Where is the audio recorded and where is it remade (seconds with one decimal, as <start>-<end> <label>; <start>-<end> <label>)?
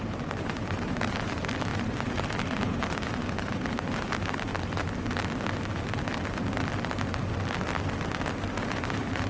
0.0-4.5 remade; 4.5-8.6 recorded; 8.6-9.3 remade